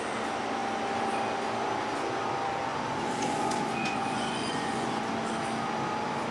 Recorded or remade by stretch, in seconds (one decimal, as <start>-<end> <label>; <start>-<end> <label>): 0.0-2.7 recorded; 2.7-5.0 remade; 5.0-6.3 recorded